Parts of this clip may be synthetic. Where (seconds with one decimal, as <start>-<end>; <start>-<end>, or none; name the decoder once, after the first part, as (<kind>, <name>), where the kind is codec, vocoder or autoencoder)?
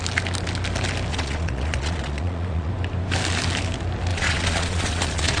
1.1-2.7 (vocoder, Vocos); 4.1-5.4